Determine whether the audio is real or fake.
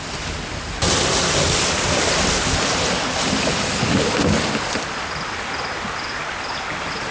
real